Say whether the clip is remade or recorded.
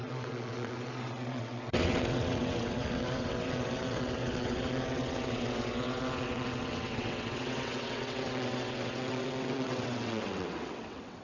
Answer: remade